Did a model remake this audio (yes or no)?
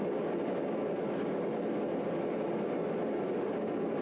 no